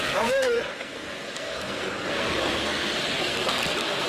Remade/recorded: remade